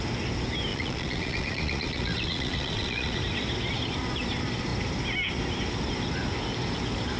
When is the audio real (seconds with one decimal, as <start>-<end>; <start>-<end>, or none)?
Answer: 0.0-0.7; 3.2-7.2